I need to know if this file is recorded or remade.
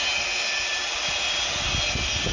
recorded